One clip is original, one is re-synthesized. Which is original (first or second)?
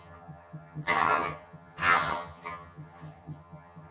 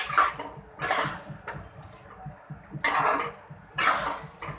second